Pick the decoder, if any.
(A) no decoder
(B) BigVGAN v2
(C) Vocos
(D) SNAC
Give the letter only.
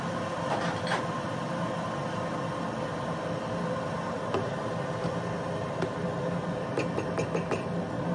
A